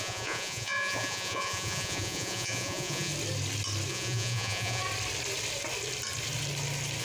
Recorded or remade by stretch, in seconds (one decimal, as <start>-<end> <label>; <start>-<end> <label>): 0.0-3.1 remade; 3.1-3.9 recorded; 3.9-4.8 remade; 4.8-7.0 recorded